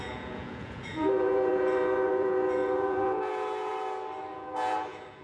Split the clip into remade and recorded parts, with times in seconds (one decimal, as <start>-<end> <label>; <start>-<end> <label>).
0.0-3.7 remade; 3.7-4.3 recorded; 4.3-5.2 remade